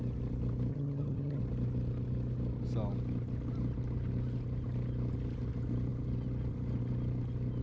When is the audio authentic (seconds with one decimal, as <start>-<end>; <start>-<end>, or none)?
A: 0.0-0.7; 1.4-7.6